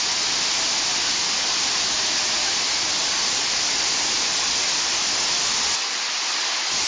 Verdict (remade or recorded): recorded